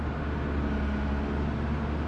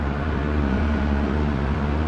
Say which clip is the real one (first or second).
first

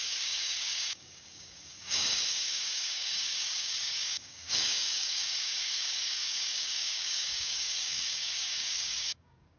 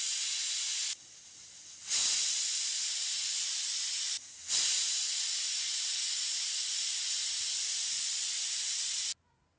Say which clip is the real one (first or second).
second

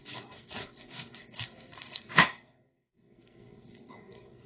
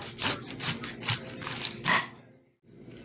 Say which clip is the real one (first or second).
second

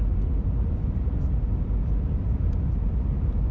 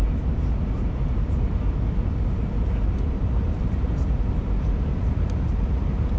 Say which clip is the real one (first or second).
first